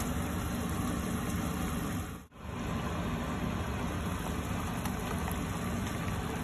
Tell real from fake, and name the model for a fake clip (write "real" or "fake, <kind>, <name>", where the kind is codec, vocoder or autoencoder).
real